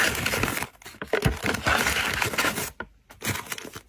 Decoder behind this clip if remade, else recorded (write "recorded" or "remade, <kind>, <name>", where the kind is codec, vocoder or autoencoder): recorded